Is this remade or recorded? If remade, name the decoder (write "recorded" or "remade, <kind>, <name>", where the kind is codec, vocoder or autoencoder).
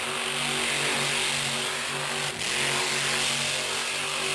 recorded